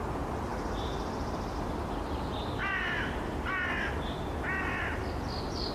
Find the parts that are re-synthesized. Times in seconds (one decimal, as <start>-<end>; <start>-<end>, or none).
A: none